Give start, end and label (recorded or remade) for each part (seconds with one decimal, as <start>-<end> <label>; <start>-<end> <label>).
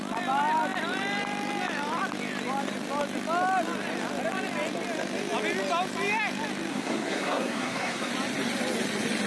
0.0-6.7 recorded; 6.7-8.1 remade; 8.1-9.3 recorded